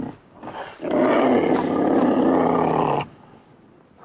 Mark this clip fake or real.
real